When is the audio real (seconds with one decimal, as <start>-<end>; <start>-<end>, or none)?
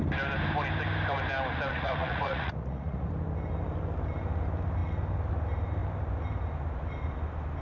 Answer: 0.0-1.7; 3.1-7.6